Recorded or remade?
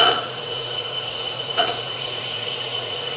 remade